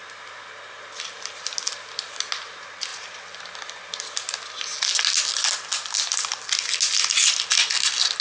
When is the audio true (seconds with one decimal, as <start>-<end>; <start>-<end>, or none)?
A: 0.0-8.2